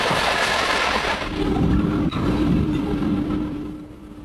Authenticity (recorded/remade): remade